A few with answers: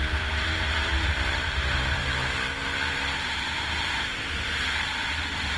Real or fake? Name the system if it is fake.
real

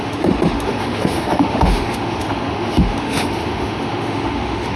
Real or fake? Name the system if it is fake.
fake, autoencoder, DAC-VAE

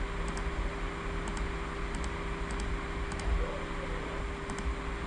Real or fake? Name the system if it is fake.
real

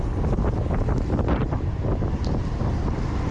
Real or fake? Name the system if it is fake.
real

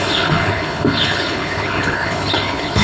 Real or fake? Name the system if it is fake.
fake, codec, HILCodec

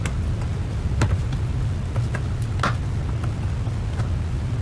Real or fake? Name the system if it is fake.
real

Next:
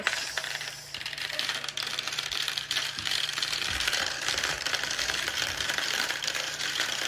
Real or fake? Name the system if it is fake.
fake, vocoder, BigVGAN v2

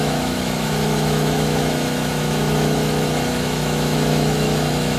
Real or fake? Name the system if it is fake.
fake, autoencoder, DAC-VAE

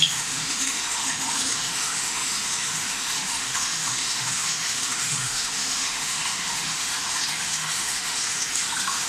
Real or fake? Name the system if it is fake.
fake, autoencoder, DAC-VAE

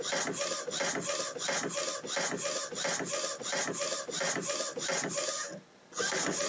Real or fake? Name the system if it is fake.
real